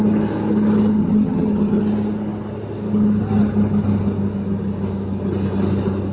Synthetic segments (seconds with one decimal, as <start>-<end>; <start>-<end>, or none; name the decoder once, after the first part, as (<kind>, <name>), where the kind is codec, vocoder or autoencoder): 1.0-1.8 (vocoder, HiFi-GAN)